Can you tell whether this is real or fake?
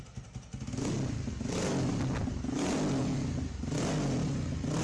real